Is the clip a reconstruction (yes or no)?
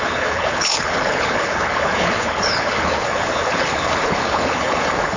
yes